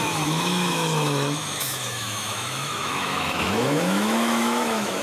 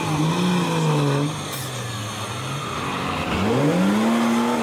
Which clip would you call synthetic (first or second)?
first